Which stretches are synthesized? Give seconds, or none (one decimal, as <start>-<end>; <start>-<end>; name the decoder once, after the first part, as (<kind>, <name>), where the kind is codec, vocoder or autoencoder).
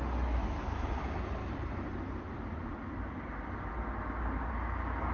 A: none